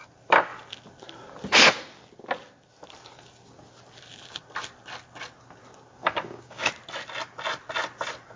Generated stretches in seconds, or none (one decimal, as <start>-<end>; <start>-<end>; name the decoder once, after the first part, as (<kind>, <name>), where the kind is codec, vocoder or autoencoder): 6.0-6.7 (codec, DAC)

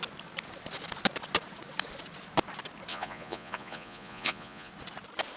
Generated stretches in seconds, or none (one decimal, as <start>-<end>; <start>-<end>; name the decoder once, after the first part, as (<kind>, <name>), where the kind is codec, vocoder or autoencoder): 2.9-4.7 (vocoder, Vocos)

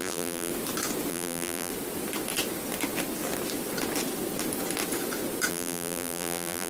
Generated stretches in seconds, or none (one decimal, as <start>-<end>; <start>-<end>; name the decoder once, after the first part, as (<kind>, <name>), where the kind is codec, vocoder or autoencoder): 0.0-0.5 (vocoder, BigVGAN v2); 1.1-1.7; 5.5-6.7

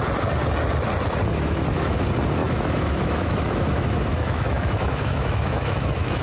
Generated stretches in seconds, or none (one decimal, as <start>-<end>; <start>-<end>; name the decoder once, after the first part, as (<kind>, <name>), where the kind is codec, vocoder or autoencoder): 1.3-2.0 (autoencoder, DAC-VAE); 2.4-6.2

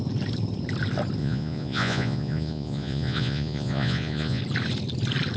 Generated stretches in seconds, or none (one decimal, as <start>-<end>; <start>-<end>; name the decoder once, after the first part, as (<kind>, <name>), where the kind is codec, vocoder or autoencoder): 1.2-4.4 (vocoder, Vocos)

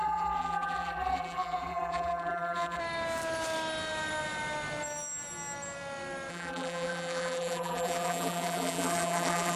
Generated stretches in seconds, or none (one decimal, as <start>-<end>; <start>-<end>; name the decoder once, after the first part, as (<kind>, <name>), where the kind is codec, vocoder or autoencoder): 0.0-2.8 (vocoder, BigVGAN v2); 6.3-9.6